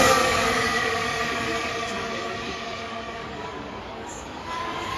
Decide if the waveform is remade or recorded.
remade